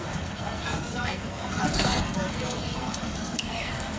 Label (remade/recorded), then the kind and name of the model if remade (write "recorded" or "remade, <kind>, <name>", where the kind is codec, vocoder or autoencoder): remade, codec, SNAC